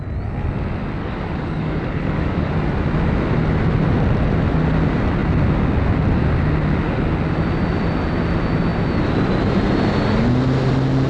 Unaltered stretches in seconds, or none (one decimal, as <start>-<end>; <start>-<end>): 0.0-1.0; 2.5-11.1